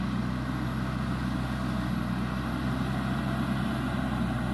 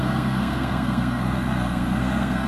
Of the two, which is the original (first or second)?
first